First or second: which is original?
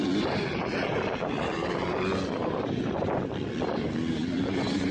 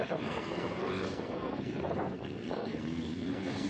first